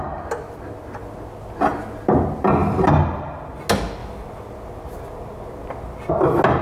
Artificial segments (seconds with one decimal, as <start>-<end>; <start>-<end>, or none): none